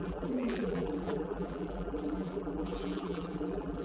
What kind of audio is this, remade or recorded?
remade